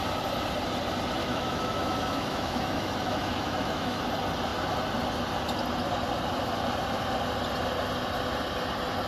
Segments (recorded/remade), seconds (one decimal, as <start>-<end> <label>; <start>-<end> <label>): 0.0-1.2 recorded; 1.2-4.0 remade; 4.0-9.1 recorded

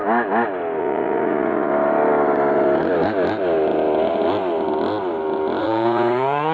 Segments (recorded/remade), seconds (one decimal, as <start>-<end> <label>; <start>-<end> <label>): 0.0-0.8 recorded; 0.8-1.7 remade; 1.7-5.6 recorded; 5.6-6.5 remade

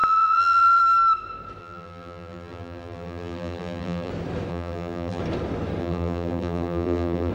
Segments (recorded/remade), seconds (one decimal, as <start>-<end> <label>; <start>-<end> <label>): 0.0-0.8 remade; 0.8-1.6 recorded; 1.6-4.1 remade; 4.1-4.5 recorded; 4.5-5.2 remade; 5.2-5.8 recorded; 5.8-7.3 remade

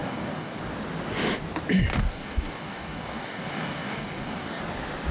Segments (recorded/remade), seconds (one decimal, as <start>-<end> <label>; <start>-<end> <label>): 0.0-0.6 remade; 0.6-1.9 recorded; 1.9-4.6 remade; 4.6-5.1 recorded

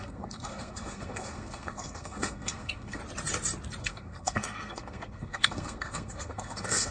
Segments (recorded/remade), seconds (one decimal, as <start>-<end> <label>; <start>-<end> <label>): 0.0-3.0 remade; 3.0-3.8 recorded; 3.8-6.9 remade

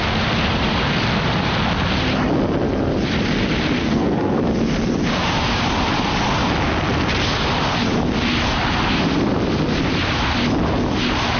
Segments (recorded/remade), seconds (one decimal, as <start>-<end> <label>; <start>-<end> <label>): 0.0-3.8 recorded; 3.8-4.4 remade; 4.4-11.4 recorded